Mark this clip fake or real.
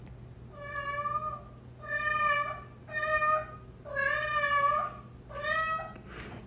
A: real